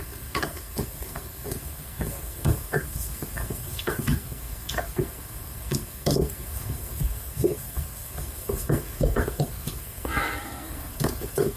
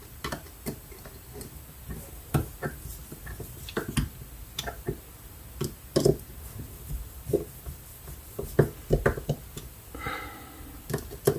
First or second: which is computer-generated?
first